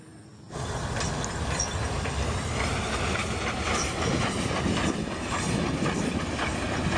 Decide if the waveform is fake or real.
real